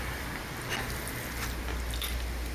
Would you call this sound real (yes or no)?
yes